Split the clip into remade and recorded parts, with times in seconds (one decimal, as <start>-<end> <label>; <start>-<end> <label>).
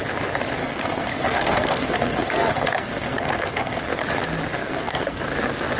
0.0-0.6 recorded; 0.6-3.8 remade; 3.8-4.6 recorded; 4.6-5.2 remade; 5.2-5.8 recorded